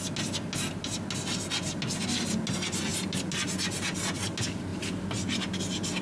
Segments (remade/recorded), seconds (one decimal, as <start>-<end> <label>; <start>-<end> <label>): 0.0-6.0 recorded